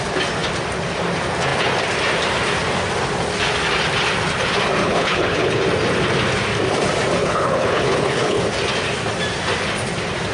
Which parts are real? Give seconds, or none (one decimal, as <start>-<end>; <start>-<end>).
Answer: 0.0-4.8; 5.6-7.2; 8.4-10.3

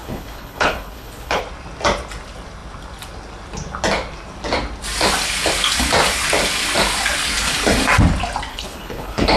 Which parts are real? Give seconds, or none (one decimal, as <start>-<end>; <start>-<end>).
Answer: 1.4-8.5

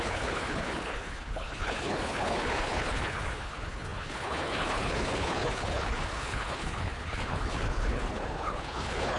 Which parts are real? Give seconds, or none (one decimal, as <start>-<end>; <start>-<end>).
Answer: none

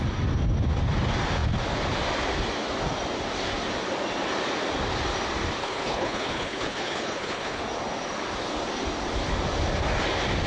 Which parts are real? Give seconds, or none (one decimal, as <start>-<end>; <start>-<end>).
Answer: 0.0-5.6; 7.6-10.5

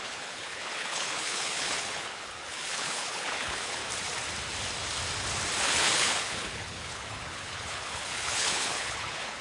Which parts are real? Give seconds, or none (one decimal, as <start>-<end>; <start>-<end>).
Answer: 3.8-5.6

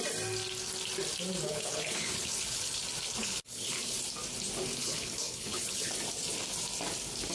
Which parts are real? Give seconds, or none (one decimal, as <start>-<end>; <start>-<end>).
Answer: 0.0-1.5; 2.8-3.2; 4.0-4.7; 5.9-7.3

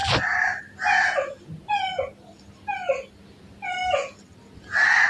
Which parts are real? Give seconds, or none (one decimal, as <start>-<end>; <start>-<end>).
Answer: 0.0-5.1